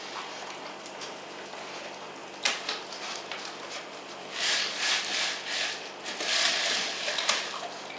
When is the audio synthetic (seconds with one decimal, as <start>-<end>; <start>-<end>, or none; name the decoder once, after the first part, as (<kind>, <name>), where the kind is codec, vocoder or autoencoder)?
4.2-4.9 (codec, DAC)